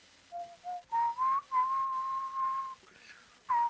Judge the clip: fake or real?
real